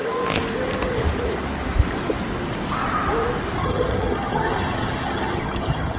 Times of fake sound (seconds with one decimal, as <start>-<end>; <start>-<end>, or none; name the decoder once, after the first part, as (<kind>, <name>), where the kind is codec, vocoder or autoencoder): 3.6-6.0 (vocoder, HiFi-GAN)